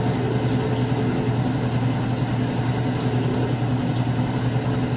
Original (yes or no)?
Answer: yes